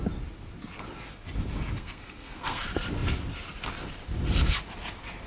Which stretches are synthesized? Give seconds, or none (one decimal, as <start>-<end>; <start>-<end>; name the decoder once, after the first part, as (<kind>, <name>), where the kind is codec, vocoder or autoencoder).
1.8-2.6 (codec, SNAC)